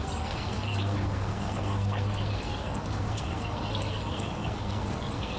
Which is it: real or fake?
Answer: fake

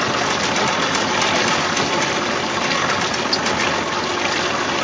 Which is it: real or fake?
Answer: real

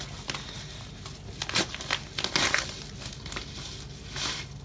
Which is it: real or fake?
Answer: real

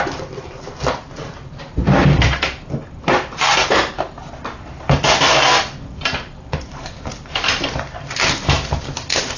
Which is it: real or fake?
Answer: fake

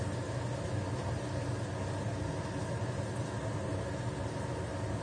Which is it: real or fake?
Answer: real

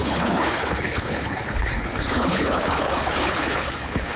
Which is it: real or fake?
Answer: fake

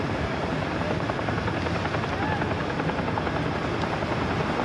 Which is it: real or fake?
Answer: real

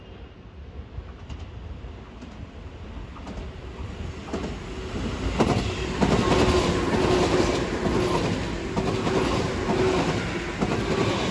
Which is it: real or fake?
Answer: real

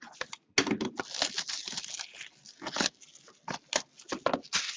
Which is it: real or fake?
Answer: real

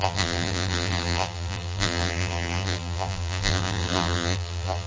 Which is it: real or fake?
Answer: fake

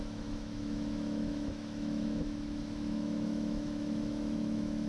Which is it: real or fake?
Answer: fake